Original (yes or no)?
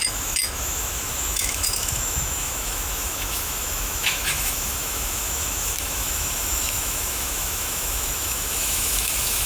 no